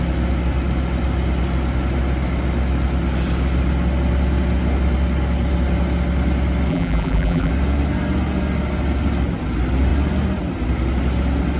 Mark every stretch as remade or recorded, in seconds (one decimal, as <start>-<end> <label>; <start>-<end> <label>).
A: 0.0-6.7 recorded; 6.7-7.5 remade; 7.5-11.6 recorded